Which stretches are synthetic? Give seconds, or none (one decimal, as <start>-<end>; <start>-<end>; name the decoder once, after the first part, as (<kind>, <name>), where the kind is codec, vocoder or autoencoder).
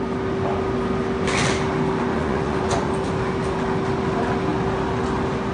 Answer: 2.1-2.9 (vocoder, Vocos)